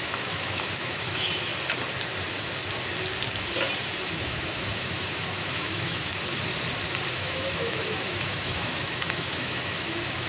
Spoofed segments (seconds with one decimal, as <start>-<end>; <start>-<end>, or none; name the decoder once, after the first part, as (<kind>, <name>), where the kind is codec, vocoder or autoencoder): 0.0-1.5 (autoencoder, DAC-VAE); 4.1-6.1; 7.1-10.3